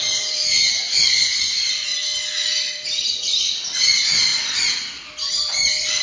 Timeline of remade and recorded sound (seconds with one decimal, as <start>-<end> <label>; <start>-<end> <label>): 0.0-2.1 remade; 2.1-2.7 recorded; 2.7-6.0 remade